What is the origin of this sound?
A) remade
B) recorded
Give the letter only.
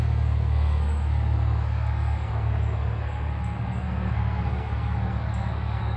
A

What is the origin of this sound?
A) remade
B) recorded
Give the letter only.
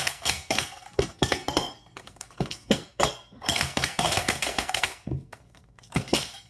A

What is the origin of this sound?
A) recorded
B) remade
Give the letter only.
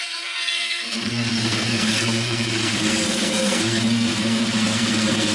B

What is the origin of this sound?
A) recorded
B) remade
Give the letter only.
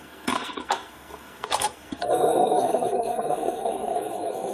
B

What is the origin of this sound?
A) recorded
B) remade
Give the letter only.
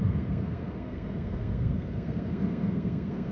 B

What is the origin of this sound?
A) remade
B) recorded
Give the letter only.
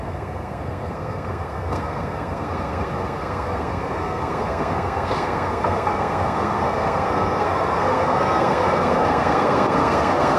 A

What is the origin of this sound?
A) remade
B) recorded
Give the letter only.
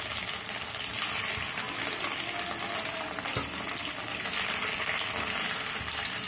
B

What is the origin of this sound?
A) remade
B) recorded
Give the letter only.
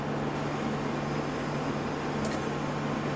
B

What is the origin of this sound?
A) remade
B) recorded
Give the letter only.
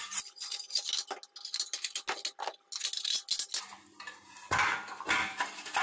B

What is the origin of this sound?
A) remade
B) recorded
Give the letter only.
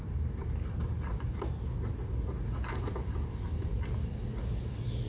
B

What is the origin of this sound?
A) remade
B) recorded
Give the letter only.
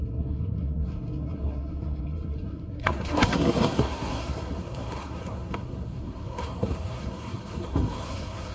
A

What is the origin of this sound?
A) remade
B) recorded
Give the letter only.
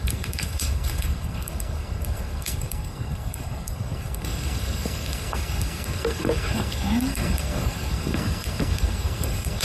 A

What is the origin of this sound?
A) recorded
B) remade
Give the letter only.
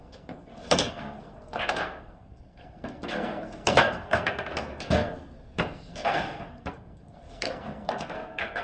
B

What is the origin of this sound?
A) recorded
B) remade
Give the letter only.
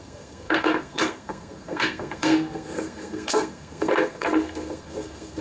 B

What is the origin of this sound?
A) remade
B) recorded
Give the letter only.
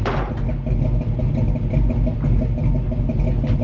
B